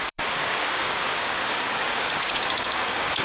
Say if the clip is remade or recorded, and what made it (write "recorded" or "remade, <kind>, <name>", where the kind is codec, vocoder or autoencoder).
remade, codec, DAC